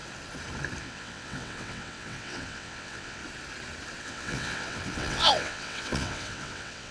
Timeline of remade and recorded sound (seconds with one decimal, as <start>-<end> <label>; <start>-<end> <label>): 0.0-0.8 recorded; 0.8-3.2 remade; 3.2-4.0 recorded; 4.0-6.9 remade